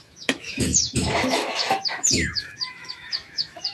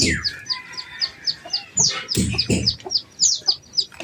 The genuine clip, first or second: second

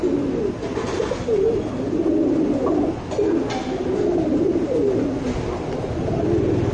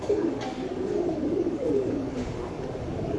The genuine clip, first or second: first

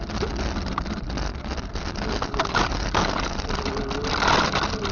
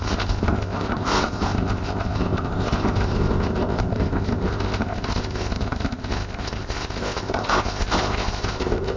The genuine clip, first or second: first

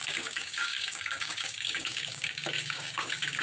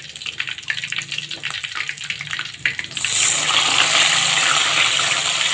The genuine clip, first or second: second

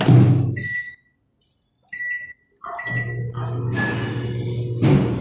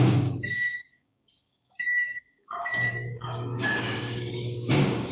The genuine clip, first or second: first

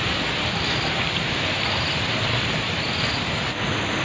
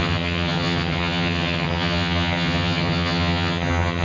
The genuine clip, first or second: first